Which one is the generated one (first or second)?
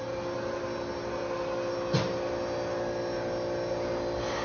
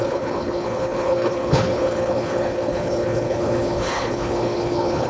second